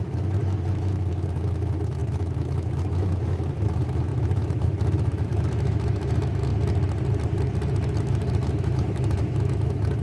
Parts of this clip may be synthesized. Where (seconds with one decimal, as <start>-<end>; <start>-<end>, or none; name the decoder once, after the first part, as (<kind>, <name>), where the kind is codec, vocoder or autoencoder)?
0.0-6.5 (autoencoder, DAC-VAE); 8.0-10.0